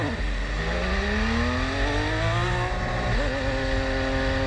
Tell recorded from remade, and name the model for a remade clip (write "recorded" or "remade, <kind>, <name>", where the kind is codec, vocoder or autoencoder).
recorded